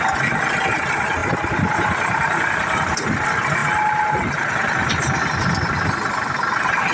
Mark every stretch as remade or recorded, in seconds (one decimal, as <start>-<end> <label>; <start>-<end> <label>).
0.0-6.9 recorded